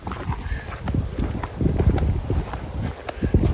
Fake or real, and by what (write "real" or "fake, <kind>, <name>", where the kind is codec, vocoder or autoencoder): real